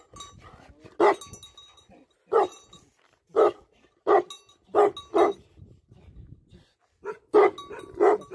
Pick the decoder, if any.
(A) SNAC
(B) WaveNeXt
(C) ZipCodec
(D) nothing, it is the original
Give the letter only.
D